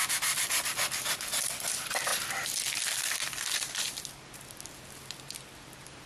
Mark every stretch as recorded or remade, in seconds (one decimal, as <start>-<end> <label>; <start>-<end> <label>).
0.0-2.1 remade; 2.1-2.8 recorded; 2.8-6.1 remade